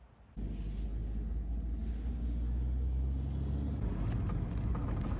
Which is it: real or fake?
real